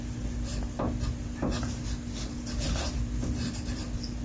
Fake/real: real